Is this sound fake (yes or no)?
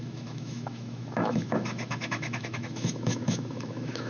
yes